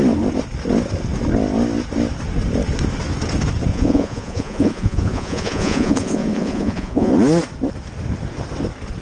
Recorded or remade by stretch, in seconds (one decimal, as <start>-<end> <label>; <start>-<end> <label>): 0.0-3.7 recorded; 3.7-7.1 remade; 7.1-9.0 recorded